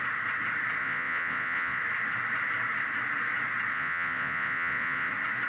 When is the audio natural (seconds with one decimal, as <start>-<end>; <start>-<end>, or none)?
0.0-0.8; 1.8-3.7; 5.1-5.5